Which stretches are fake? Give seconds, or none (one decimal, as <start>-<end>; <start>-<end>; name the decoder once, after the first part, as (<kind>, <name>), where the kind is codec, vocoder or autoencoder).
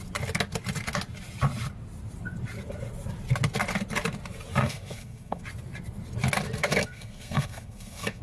4.6-5.4 (codec, SNAC); 6.6-8.2